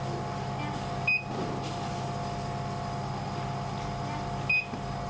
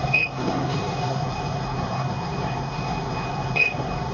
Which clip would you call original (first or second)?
first